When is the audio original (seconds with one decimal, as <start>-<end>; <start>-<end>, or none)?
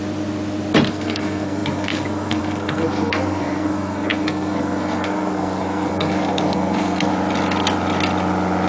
0.0-0.9; 7.1-8.7